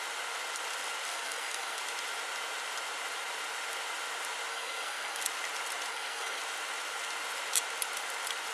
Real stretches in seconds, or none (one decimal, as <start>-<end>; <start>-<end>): 0.0-1.1; 1.8-4.5; 5.2-5.9; 6.4-8.5